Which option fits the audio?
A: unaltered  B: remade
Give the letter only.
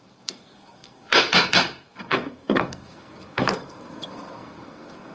B